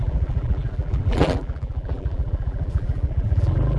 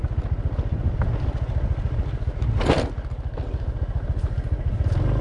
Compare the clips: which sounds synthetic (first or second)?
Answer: first